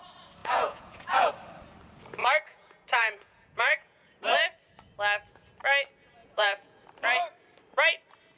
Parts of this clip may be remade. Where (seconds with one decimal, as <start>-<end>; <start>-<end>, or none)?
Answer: 0.4-1.3; 2.2-4.2; 6.2-6.8